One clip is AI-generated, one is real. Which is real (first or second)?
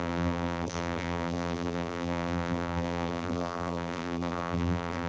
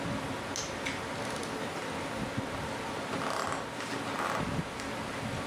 second